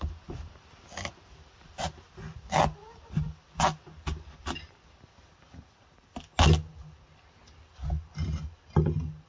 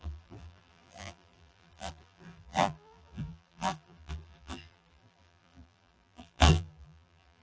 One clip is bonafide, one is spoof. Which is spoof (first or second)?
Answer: second